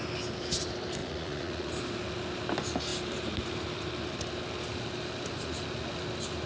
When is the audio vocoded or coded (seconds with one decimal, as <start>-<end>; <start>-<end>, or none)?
1.0-1.7